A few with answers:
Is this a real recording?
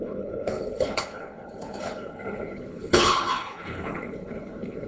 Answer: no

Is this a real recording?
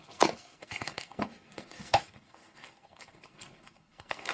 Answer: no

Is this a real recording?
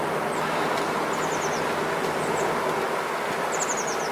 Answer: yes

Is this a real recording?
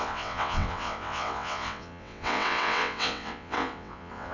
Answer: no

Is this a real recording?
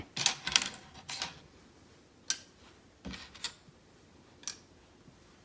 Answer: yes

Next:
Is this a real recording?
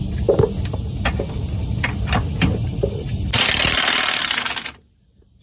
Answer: yes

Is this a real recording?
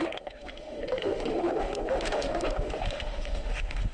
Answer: no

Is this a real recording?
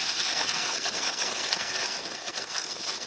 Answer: no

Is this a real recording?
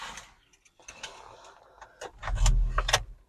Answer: yes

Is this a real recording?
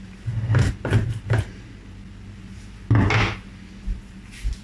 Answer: yes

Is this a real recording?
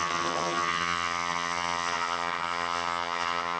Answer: no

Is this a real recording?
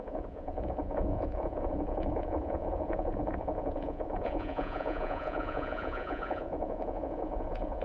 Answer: no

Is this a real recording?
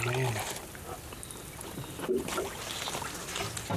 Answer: yes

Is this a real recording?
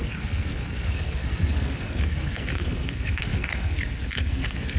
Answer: no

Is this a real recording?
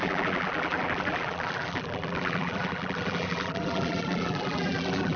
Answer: no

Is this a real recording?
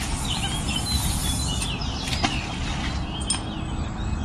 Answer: yes